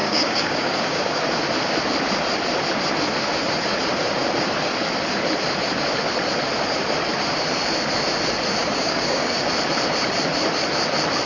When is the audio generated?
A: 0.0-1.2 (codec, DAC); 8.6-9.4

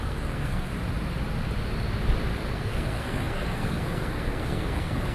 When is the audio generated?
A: 0.0-0.7 (codec, SNAC); 2.5-5.1